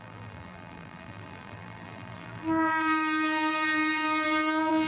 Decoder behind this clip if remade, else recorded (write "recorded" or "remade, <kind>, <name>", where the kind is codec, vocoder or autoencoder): remade, vocoder, BigVGAN v2